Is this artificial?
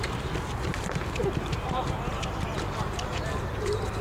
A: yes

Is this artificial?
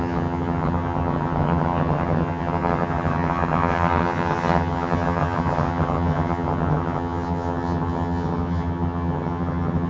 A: yes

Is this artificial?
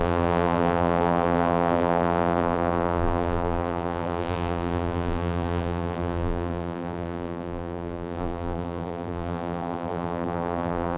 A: yes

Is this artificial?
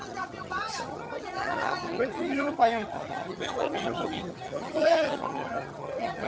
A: yes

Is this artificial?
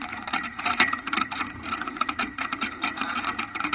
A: yes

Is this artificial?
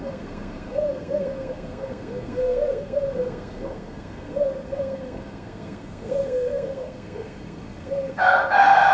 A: yes